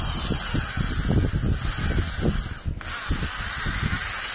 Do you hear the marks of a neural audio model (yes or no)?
no